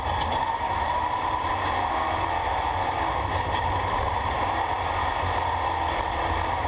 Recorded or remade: recorded